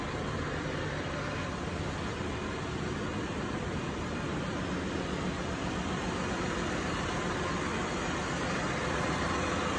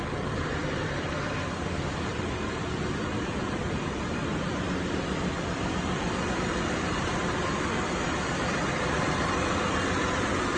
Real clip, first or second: first